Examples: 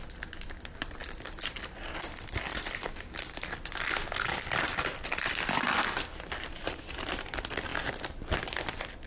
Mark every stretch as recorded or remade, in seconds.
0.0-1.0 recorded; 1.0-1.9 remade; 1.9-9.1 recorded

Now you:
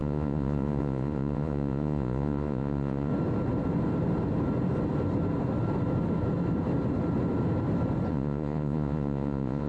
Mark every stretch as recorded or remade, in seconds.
0.0-3.1 remade; 3.1-8.1 recorded; 8.1-9.7 remade